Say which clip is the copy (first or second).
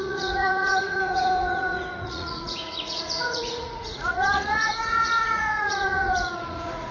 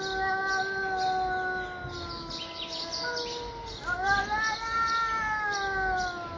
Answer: first